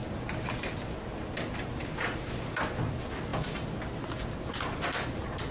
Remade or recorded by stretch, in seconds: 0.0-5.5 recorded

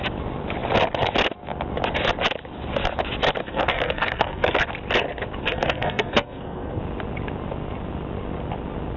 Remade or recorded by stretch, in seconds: 0.0-3.4 recorded; 3.4-4.6 remade; 4.6-5.4 recorded; 5.4-6.8 remade; 6.8-9.0 recorded

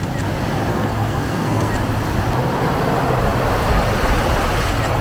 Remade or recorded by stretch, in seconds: 0.0-0.7 recorded; 0.7-1.7 remade; 1.7-5.0 recorded

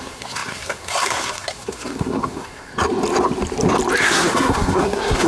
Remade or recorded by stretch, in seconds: 0.0-2.7 remade; 2.7-4.0 recorded; 4.0-5.3 remade

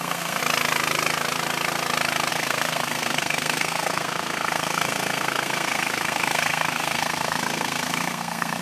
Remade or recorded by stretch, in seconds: 0.0-0.4 remade; 0.4-2.3 recorded; 2.3-8.6 remade